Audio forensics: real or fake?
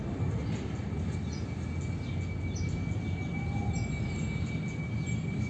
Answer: real